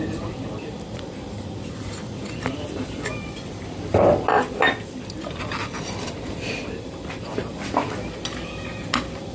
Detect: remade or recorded remade